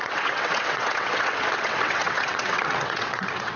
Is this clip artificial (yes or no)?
yes